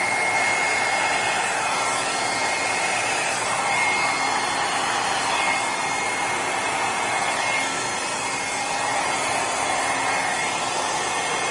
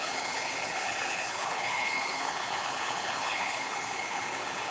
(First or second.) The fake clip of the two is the second